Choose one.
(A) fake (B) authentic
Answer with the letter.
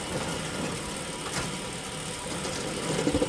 B